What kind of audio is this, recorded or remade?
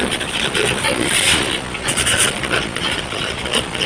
remade